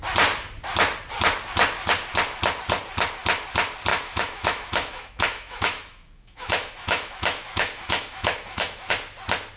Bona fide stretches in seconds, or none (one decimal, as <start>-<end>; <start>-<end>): 0.0-3.9; 8.9-9.6